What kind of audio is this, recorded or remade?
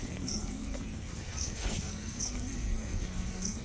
remade